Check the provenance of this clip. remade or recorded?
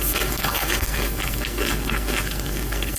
remade